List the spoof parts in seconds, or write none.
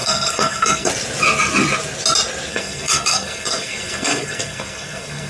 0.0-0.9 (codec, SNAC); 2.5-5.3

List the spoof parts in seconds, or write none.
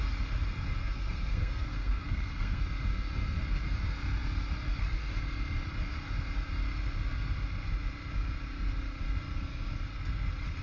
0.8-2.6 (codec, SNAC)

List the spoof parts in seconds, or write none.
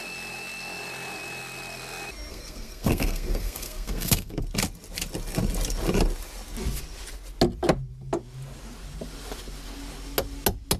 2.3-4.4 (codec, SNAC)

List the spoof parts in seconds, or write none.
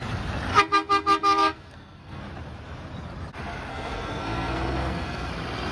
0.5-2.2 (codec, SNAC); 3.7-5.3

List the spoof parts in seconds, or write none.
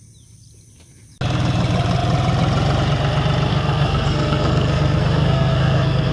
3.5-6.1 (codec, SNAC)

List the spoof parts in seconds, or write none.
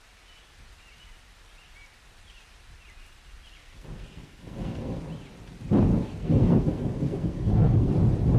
3.6-5.0 (codec, SNAC); 5.9-7.9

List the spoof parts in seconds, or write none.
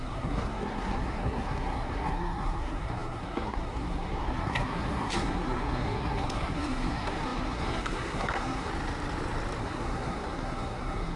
0.0-8.7 (codec, SNAC); 9.6-11.2